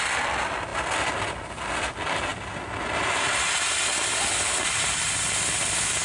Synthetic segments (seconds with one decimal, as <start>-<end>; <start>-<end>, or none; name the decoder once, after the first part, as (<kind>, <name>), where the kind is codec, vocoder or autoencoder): none